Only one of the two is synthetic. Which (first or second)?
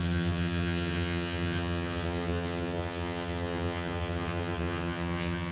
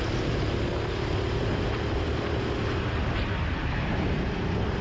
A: first